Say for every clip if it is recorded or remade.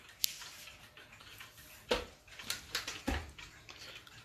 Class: recorded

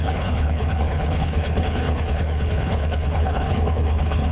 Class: remade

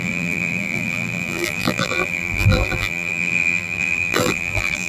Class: remade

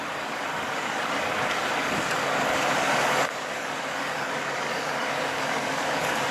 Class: remade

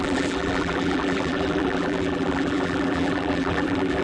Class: remade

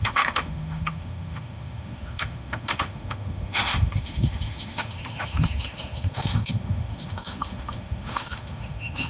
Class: remade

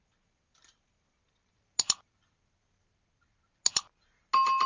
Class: recorded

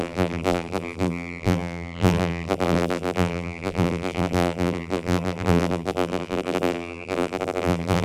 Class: remade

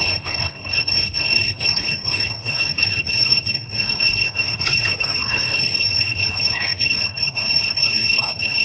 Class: remade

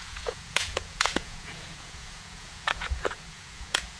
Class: remade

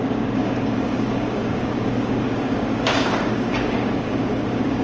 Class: remade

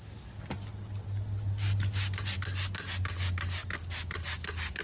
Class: recorded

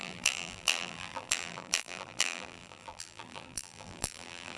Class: remade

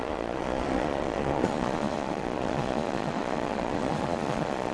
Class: remade